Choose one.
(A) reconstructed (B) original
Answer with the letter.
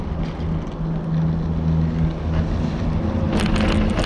B